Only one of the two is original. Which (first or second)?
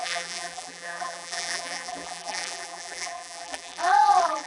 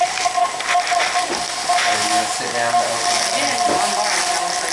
second